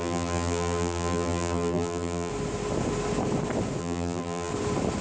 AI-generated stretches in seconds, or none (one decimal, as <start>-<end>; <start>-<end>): 0.0-2.3; 3.8-4.5